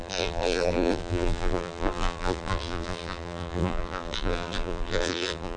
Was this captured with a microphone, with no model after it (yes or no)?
no